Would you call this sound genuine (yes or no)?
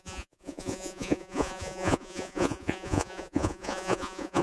no